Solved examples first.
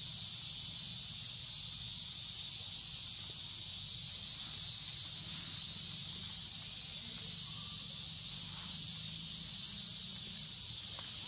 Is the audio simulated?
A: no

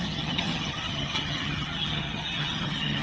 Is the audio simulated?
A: yes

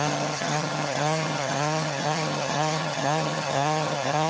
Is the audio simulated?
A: yes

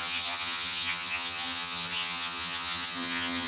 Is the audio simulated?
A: yes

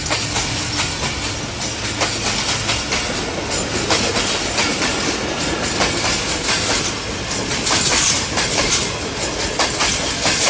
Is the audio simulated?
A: no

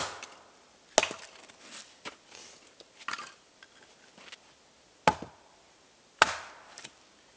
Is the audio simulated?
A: no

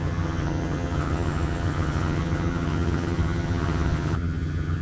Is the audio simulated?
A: yes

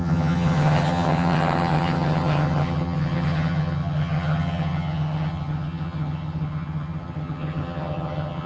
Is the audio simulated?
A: yes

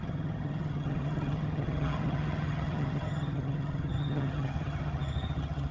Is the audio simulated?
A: yes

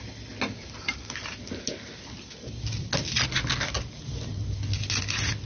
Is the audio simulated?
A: no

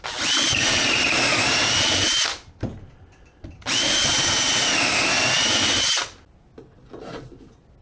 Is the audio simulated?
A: no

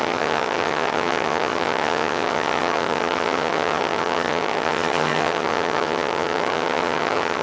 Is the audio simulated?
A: yes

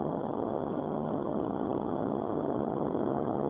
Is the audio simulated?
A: yes